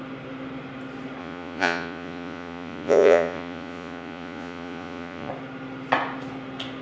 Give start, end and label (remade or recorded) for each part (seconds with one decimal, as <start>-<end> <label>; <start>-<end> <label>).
0.0-1.2 recorded; 1.2-5.3 remade; 5.3-6.8 recorded